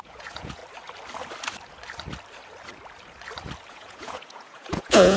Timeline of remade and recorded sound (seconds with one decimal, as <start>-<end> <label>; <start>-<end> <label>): 0.0-0.6 remade; 0.6-3.7 recorded; 3.7-5.2 remade